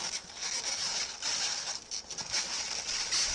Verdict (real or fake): real